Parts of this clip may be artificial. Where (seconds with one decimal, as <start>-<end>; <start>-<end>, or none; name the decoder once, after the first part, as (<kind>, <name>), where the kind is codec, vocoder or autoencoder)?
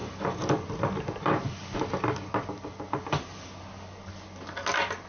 none